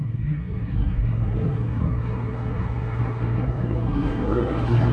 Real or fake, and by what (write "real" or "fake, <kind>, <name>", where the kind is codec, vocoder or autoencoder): fake, codec, SNAC